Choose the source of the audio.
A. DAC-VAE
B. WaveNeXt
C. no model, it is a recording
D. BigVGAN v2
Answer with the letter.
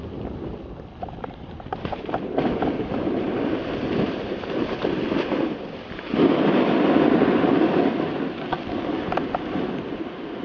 C